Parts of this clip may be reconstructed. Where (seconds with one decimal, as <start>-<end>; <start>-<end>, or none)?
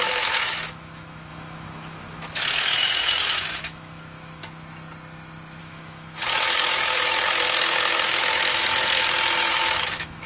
0.0-4.4; 5.6-8.5; 9.4-10.3